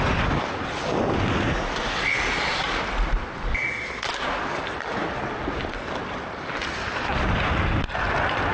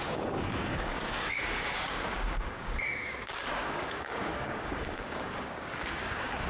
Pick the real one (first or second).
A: first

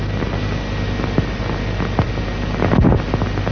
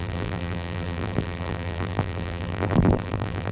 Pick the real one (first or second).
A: first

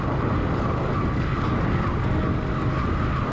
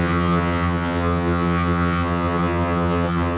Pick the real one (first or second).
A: first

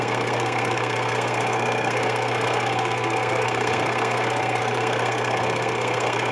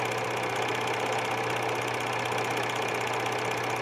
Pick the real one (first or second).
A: second